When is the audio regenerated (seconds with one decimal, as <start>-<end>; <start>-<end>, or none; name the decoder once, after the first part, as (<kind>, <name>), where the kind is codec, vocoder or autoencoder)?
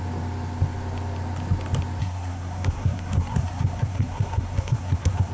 2.0-5.3 (codec, SNAC)